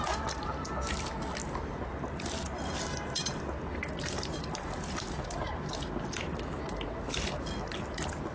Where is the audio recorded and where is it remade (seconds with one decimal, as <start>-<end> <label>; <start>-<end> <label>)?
0.0-8.3 recorded